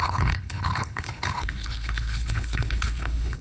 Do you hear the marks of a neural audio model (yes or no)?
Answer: yes